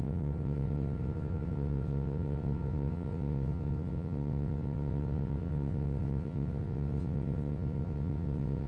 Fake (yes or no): yes